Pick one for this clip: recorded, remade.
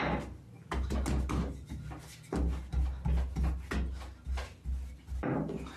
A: recorded